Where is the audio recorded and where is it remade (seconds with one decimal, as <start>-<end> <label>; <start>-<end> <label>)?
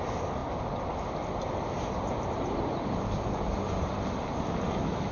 0.0-5.1 recorded